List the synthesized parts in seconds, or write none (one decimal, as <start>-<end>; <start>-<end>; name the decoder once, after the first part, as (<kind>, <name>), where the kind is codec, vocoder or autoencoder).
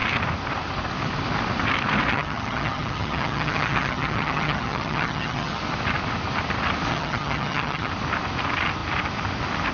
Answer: 2.1-5.6 (vocoder, HiFi-GAN); 6.9-7.9